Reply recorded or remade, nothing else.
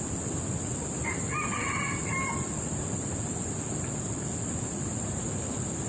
recorded